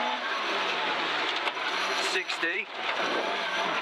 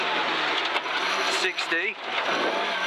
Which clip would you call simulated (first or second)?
first